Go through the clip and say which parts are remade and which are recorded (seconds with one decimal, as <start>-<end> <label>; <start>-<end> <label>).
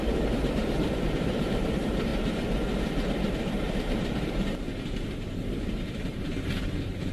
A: 0.0-2.1 remade; 2.1-3.5 recorded; 3.5-4.7 remade; 4.7-5.6 recorded; 5.6-7.1 remade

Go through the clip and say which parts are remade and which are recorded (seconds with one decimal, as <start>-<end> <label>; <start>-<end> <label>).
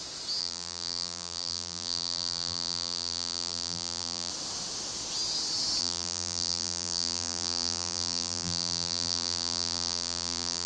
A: 0.0-0.4 recorded; 0.4-4.3 remade; 4.3-5.8 recorded; 5.8-10.7 remade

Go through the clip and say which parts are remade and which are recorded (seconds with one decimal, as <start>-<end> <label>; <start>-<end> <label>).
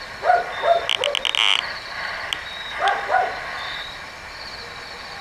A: 0.0-1.5 recorded; 1.5-3.0 remade; 3.0-5.2 recorded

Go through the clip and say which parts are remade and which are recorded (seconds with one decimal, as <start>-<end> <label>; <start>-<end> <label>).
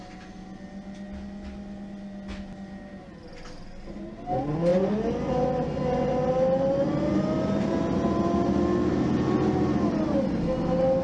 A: 0.0-11.0 recorded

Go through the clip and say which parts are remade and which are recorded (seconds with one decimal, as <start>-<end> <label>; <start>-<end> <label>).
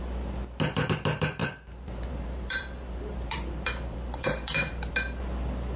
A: 0.0-1.4 recorded; 1.4-4.9 remade; 4.9-5.8 recorded